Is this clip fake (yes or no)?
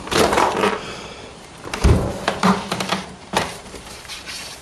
yes